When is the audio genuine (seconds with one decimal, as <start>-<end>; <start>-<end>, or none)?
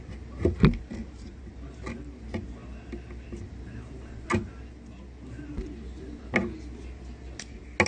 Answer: 0.0-0.9; 1.4-7.9